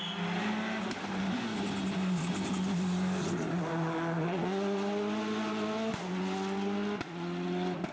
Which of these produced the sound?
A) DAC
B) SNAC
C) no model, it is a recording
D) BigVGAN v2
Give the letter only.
C